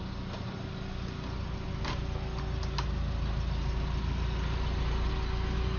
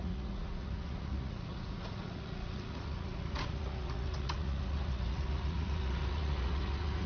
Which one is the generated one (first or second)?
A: second